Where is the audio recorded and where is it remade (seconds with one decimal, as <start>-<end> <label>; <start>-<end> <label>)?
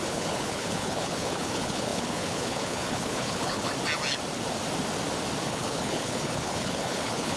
0.0-3.7 remade; 3.7-5.5 recorded; 5.5-7.4 remade